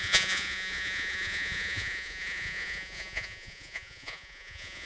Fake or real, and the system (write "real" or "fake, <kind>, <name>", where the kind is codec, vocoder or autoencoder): fake, vocoder, Vocos